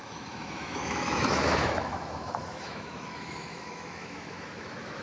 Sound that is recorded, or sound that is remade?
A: remade